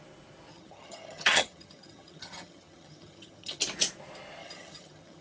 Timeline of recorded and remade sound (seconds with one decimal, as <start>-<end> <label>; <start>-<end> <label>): 0.0-0.5 recorded; 0.5-3.6 remade; 3.6-4.4 recorded; 4.4-5.2 remade

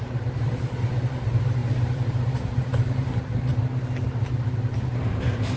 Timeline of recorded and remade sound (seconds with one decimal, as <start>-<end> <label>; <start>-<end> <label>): 0.0-3.5 remade; 3.5-4.9 recorded; 4.9-5.6 remade